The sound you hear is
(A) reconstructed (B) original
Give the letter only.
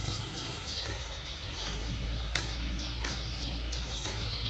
A